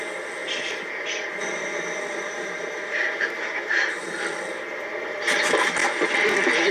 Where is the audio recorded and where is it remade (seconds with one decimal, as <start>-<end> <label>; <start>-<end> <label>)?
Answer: 0.0-0.4 recorded; 0.4-4.2 remade; 4.2-6.7 recorded